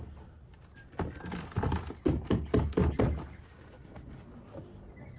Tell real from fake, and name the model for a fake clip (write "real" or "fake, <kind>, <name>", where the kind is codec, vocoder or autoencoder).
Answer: real